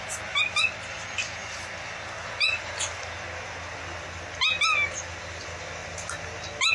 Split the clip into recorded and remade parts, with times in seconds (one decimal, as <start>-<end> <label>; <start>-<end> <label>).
0.0-6.7 recorded